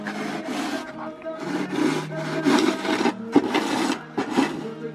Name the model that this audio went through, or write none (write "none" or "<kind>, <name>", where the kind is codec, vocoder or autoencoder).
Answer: none